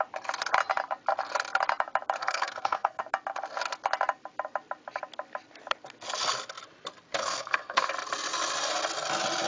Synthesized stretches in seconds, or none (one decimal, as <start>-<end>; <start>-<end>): 2.2-3.0; 7.2-7.9